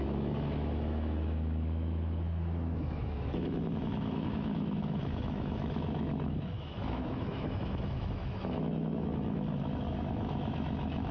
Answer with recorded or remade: remade